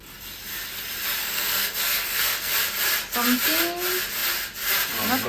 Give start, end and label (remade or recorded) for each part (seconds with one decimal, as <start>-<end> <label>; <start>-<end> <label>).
0.0-1.2 recorded; 1.2-2.5 remade; 2.5-5.3 recorded